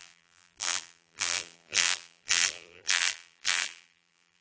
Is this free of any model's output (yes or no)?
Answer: no